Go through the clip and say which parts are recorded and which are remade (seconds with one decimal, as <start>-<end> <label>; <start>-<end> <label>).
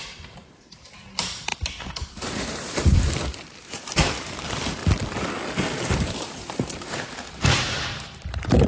0.0-4.8 remade; 4.8-5.9 recorded; 5.9-8.7 remade